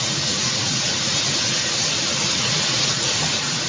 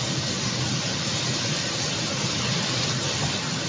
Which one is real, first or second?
second